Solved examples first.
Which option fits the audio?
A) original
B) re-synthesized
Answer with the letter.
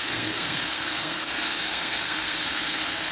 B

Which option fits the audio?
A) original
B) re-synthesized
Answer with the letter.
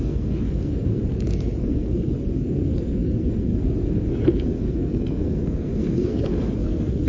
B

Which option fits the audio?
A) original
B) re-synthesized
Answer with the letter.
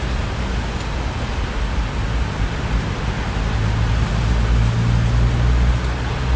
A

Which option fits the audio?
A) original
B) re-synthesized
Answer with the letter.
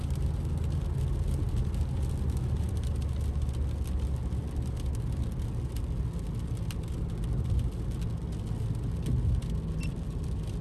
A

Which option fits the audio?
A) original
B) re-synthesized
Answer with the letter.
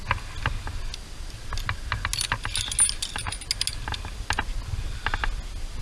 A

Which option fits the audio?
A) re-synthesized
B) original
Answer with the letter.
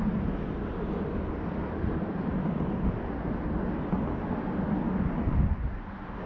B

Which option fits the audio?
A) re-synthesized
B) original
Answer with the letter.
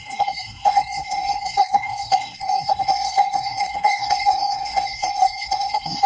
A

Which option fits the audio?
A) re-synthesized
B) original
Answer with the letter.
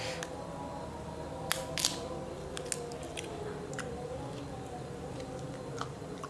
B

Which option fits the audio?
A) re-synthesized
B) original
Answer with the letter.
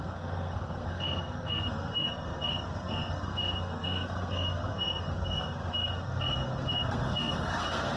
A